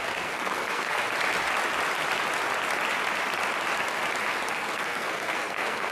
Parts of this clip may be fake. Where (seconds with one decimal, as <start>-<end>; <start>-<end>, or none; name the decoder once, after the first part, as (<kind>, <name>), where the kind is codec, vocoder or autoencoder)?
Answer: 0.0-1.0 (codec, SNAC); 4.5-5.9